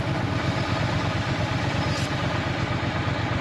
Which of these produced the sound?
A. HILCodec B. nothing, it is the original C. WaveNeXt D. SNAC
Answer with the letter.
B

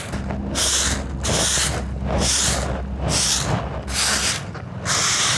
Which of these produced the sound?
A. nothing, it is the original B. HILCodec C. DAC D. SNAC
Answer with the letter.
A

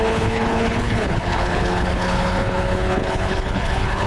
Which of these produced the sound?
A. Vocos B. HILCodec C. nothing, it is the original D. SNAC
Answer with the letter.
B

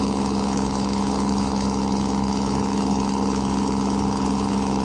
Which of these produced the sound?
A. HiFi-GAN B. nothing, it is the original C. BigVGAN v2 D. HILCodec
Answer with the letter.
D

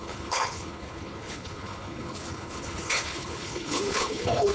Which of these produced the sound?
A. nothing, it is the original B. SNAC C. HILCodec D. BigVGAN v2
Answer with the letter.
C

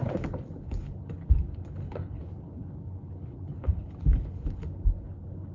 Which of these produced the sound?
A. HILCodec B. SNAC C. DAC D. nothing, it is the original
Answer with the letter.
A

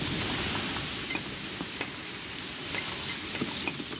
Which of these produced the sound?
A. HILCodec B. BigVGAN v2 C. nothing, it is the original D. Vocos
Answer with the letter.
C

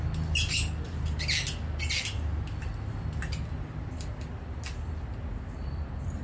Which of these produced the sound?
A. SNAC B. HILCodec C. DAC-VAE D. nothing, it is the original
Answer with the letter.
D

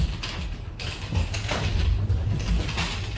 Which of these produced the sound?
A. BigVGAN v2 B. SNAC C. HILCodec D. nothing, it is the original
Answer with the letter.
D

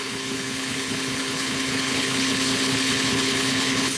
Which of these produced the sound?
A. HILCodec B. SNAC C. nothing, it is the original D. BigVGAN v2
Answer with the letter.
A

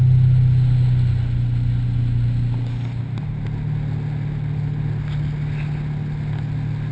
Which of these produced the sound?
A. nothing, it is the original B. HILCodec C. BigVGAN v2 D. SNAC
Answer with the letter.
A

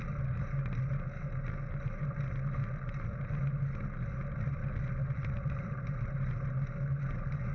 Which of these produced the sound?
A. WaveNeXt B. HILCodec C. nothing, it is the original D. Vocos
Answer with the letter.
C